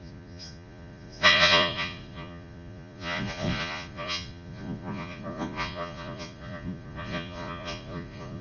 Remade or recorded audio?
remade